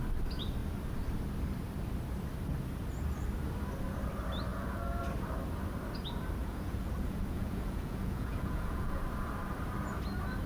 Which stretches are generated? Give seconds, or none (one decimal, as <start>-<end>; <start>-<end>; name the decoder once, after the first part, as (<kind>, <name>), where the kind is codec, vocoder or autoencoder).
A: 4.5-5.0 (vocoder, Vocos); 6.4-9.0